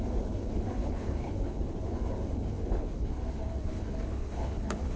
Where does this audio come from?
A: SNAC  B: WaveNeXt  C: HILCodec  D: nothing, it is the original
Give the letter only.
C